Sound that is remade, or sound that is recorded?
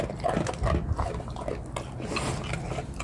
recorded